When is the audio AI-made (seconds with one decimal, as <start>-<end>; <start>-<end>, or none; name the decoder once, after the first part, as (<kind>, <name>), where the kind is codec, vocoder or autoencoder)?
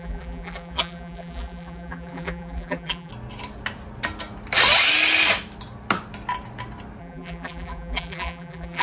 0.0-3.1 (vocoder, BigVGAN v2); 7.0-8.8